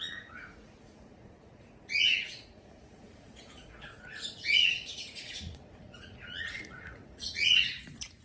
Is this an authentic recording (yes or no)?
no